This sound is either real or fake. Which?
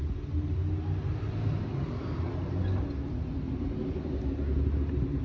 real